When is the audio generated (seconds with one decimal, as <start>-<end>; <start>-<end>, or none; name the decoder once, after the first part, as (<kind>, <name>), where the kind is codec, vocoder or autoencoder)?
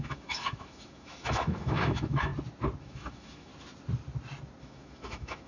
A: 0.0-2.3 (autoencoder, DAC-VAE); 2.8-3.5; 4.6-5.5